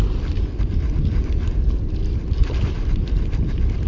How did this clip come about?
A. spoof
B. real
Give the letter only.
B